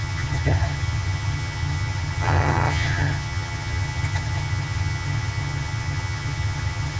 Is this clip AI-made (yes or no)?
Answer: yes